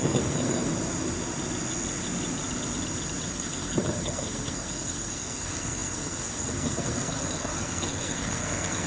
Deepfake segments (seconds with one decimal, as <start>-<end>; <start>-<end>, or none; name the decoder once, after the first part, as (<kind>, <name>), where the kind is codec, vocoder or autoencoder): 0.0-0.7 (codec, SNAC); 3.3-8.9